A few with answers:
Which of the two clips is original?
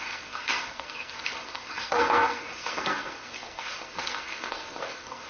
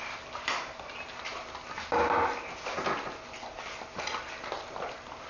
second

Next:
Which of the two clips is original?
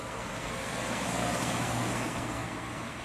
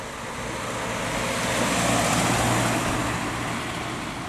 second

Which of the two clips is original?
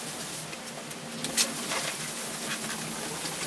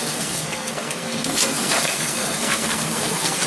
first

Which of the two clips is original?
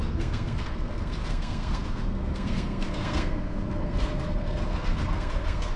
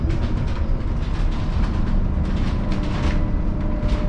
second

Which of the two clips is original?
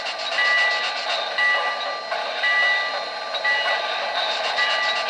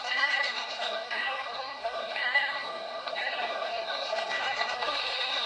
first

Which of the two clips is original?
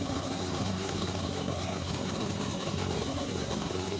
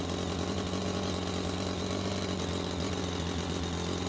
second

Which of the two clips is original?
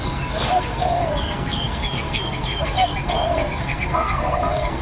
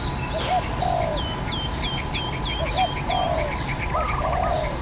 second